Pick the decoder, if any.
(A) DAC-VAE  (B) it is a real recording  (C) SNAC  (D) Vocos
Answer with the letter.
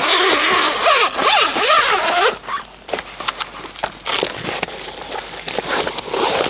B